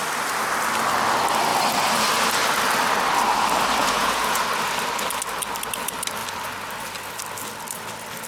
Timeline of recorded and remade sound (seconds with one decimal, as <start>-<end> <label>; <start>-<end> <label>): 0.0-3.8 recorded; 3.8-4.4 remade; 4.4-8.3 recorded